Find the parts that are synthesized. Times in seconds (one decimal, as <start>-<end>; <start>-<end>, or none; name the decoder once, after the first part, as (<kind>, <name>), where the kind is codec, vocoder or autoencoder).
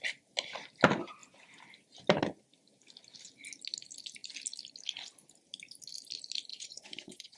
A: 6.5-7.4 (vocoder, Vocos)